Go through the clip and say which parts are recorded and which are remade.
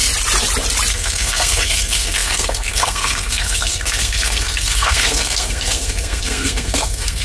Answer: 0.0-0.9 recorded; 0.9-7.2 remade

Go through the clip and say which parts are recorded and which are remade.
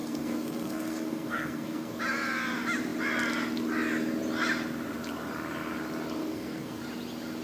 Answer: 0.0-2.0 remade; 2.0-6.2 recorded; 6.2-6.8 remade; 6.8-7.4 recorded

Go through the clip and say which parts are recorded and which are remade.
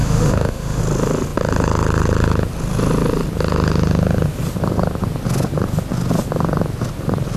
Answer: 0.0-0.8 remade; 0.8-7.4 recorded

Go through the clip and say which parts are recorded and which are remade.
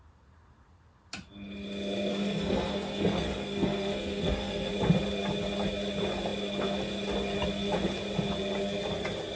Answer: 0.0-2.1 recorded; 2.1-4.7 remade; 4.7-9.4 recorded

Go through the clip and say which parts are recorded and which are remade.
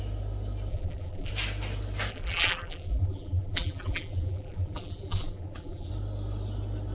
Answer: 0.0-0.7 recorded; 0.7-1.3 remade; 1.3-2.1 recorded; 2.1-5.9 remade; 5.9-6.9 recorded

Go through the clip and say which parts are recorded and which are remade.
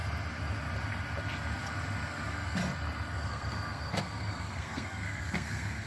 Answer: 0.0-2.1 recorded; 2.1-2.6 remade; 2.6-3.3 recorded; 3.3-5.9 remade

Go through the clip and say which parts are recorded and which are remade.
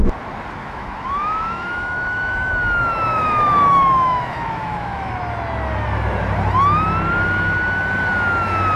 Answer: 0.0-0.6 recorded; 0.6-2.5 remade; 2.5-3.1 recorded; 3.1-5.1 remade; 5.1-8.8 recorded